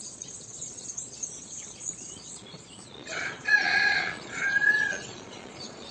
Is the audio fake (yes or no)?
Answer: yes